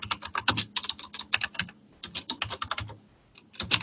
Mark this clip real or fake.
real